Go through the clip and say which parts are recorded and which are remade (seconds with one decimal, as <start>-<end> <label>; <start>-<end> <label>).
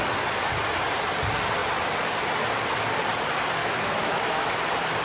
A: 0.0-3.6 recorded; 3.6-4.5 remade; 4.5-5.0 recorded